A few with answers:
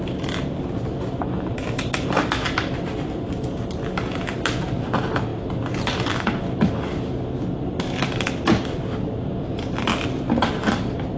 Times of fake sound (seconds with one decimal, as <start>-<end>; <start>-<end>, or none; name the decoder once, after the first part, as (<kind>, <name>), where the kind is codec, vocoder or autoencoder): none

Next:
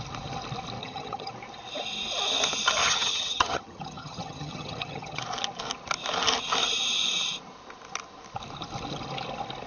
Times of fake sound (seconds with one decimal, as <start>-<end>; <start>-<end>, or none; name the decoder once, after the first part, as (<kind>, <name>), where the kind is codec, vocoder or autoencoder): 0.8-1.3 (vocoder, HiFi-GAN); 2.8-5.2

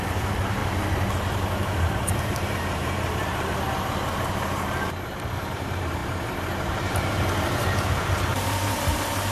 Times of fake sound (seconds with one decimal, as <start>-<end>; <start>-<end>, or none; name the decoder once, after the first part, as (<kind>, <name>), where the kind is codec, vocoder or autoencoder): 0.0-0.6 (vocoder, BigVGAN v2); 1.1-9.3

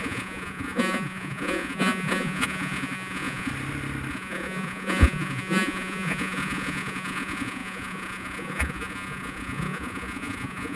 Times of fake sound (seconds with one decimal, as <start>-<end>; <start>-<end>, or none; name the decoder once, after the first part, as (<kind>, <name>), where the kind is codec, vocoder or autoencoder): 0.0-3.5 (vocoder, Vocos); 4.1-10.8